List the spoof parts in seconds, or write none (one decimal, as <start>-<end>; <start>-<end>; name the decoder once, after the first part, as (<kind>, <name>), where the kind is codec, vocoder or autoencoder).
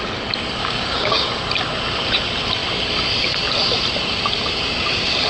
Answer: 0.6-1.3 (codec, DAC)